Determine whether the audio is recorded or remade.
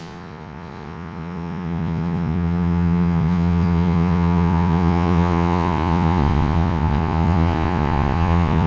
remade